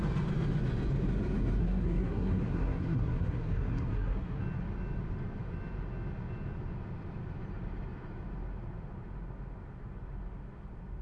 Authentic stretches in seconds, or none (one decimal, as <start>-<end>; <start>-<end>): 0.0-1.6; 4.4-11.0